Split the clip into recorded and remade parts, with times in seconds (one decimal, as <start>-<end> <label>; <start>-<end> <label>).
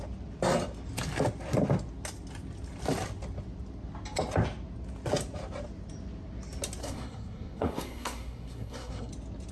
0.0-6.8 recorded; 6.8-9.1 remade; 9.1-9.5 recorded